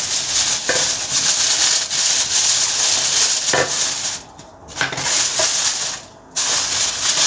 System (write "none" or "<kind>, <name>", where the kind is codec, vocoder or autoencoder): none